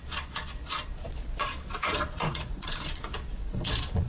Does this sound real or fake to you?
fake